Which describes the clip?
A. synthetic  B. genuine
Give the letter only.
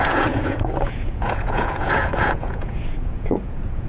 A